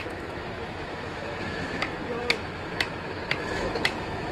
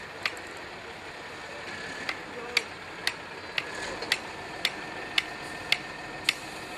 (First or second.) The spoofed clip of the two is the first